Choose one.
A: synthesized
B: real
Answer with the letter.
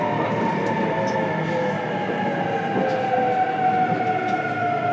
B